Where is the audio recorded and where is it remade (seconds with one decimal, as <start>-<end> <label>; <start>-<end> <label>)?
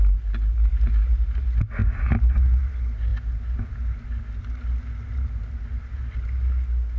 0.0-7.0 recorded